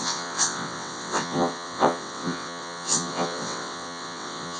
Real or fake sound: fake